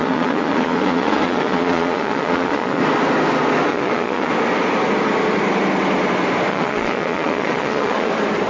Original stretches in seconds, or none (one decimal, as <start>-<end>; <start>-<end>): 2.8-3.7; 4.3-6.5; 8.1-8.5